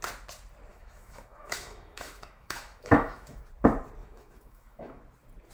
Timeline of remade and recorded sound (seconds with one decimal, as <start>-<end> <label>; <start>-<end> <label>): 0.0-0.7 recorded; 0.7-3.4 remade; 3.4-4.0 recorded; 4.0-5.0 remade; 5.0-5.5 recorded